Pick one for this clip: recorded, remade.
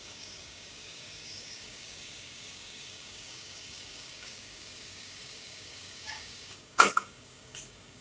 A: remade